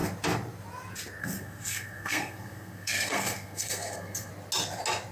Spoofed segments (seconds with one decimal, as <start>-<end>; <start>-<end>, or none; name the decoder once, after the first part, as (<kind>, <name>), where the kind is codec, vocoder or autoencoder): 1.2-4.3 (codec, SNAC)

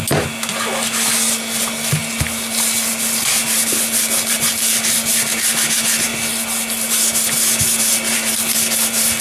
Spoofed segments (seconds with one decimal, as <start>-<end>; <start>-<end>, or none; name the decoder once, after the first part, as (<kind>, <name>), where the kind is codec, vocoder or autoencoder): none